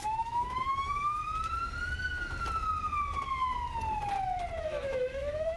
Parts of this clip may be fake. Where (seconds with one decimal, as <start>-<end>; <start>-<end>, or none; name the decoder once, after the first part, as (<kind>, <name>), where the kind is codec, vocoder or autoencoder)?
0.0-1.2 (autoencoder, DAC-VAE); 4.6-5.6